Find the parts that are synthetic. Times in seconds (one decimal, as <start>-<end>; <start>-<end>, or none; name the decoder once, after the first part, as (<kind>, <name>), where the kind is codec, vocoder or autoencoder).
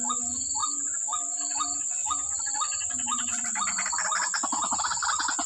none